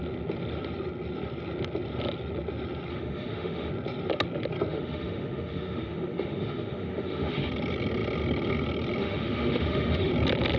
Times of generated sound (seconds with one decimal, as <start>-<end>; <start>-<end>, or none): 2.9-3.7; 4.7-7.5; 9.0-10.1